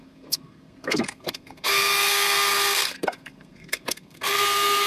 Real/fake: fake